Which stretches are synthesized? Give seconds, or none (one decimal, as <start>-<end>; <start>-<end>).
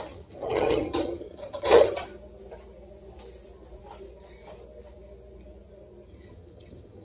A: 0.0-2.1; 6.1-7.0